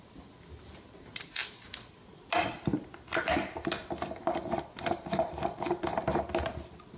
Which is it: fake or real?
real